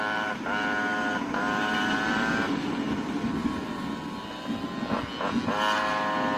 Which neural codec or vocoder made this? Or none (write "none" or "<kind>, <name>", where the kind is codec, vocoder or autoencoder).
none